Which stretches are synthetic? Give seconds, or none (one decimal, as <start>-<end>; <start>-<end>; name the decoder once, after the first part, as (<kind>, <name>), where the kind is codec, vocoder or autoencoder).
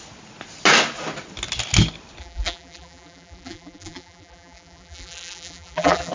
2.2-6.1 (vocoder, BigVGAN v2)